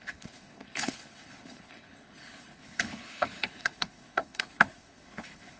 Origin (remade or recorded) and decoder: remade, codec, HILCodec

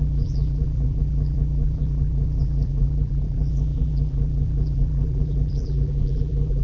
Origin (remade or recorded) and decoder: remade, vocoder, BigVGAN v2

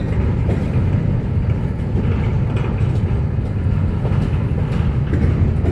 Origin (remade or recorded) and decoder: recorded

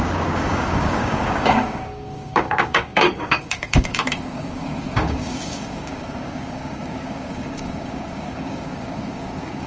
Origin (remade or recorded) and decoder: remade, codec, DAC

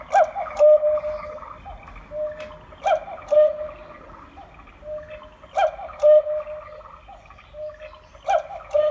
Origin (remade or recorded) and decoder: recorded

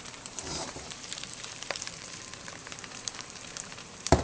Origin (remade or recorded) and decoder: remade, vocoder, BigVGAN v2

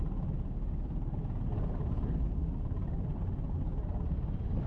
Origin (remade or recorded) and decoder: recorded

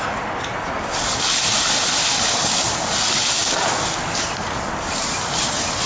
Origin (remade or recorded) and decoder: recorded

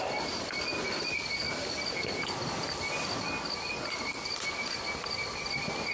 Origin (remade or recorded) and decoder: recorded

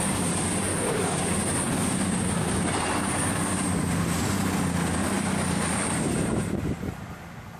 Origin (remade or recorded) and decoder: recorded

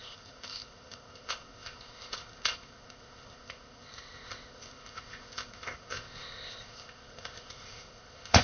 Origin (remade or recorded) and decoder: remade, codec, ZipCodec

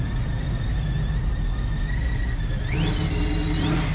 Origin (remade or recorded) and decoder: recorded